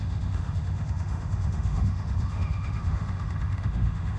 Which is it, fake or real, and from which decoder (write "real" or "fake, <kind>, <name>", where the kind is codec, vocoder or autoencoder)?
fake, autoencoder, DAC-VAE